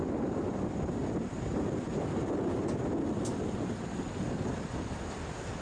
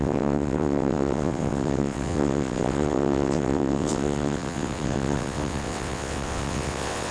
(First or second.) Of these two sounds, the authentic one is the first